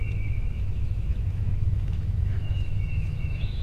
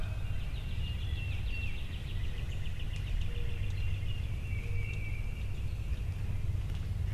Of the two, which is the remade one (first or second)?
first